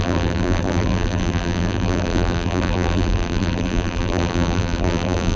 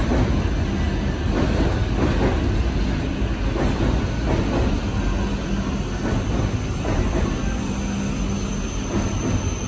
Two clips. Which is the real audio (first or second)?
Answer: second